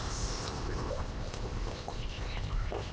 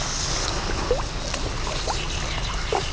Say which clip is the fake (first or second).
first